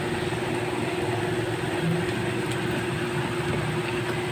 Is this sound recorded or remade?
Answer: recorded